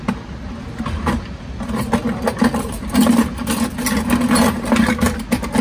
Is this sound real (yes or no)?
yes